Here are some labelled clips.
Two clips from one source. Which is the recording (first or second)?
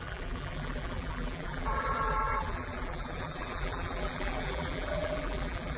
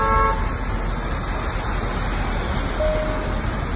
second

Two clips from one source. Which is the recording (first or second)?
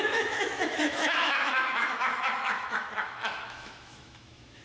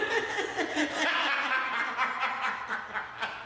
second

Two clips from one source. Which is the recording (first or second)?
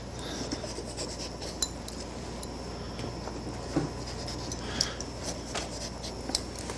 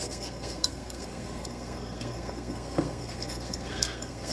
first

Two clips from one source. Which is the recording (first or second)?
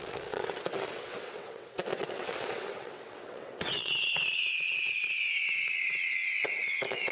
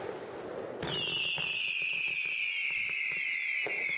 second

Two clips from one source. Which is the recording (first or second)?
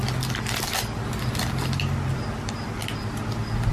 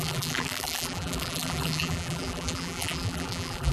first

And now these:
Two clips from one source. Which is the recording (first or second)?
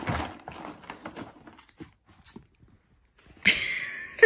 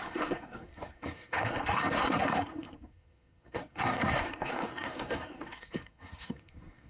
first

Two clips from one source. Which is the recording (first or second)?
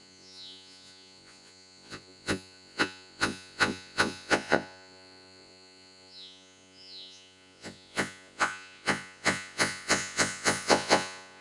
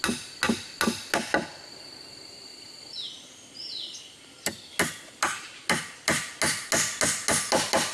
second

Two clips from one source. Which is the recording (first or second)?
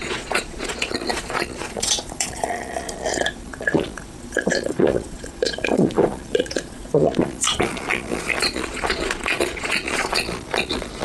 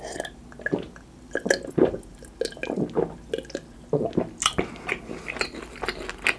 second